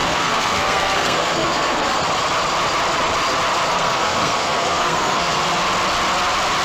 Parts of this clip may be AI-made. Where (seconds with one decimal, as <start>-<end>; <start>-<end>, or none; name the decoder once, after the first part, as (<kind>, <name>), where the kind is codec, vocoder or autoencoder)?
0.0-2.0 (codec, SNAC); 3.7-5.4